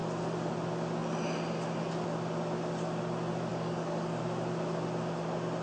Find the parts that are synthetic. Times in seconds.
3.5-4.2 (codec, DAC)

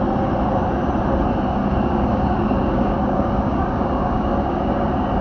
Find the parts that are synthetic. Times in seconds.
1.6-4.7 (codec, DAC)

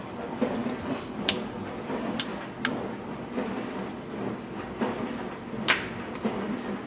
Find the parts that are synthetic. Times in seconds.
none

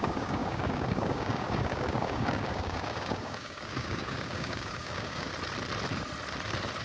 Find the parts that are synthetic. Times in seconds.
0.0-5.3 (codec, DAC)

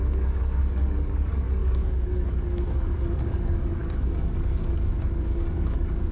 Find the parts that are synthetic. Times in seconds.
0.0-6.1 (codec, DAC)

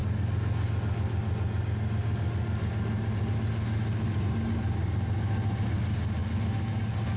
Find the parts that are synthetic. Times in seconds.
none